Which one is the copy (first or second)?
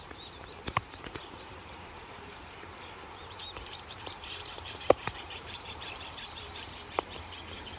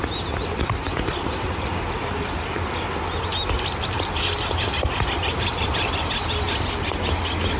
first